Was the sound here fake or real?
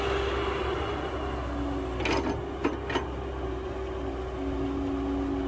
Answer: real